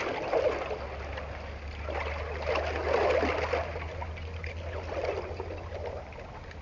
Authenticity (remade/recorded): recorded